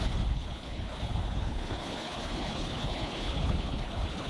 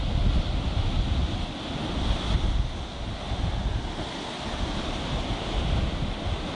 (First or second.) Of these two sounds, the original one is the second